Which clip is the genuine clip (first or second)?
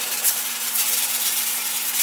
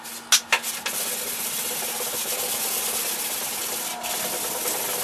second